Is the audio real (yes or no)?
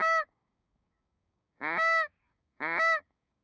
no